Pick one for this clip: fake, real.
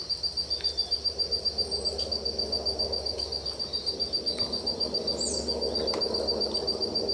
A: real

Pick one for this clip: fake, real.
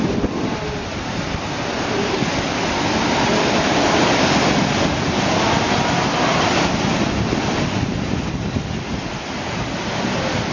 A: real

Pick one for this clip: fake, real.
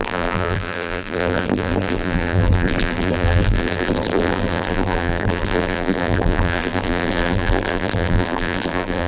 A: fake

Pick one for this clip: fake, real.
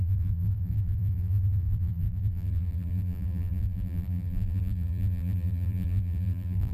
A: fake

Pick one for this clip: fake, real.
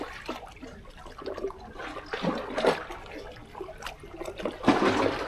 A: real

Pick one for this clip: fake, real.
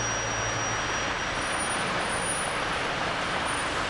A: real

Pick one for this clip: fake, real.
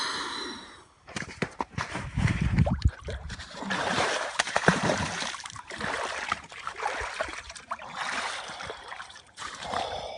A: fake